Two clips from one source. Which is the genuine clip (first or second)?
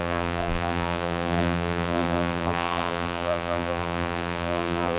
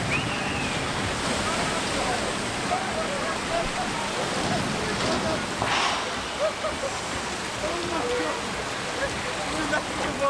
second